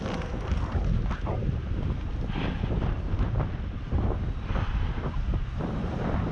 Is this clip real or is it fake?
real